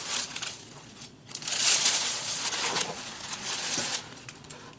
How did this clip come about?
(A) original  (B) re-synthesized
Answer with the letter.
B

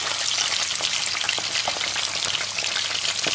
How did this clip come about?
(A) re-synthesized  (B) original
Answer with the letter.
B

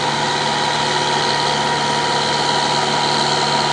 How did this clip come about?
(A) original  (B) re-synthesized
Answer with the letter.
A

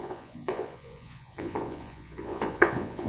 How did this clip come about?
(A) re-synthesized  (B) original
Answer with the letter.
A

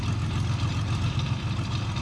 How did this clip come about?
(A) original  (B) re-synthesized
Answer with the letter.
A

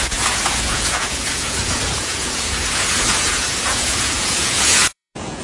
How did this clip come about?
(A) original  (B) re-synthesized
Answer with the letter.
B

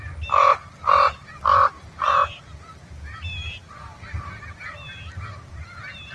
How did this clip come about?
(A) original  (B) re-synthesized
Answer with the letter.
A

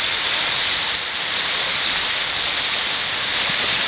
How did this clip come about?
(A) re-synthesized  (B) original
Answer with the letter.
B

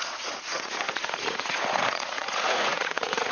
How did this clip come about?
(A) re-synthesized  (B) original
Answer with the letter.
A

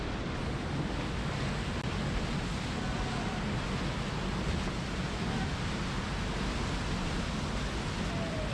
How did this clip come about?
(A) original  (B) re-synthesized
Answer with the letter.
A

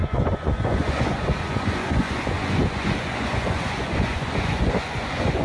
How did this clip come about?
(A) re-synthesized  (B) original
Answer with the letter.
A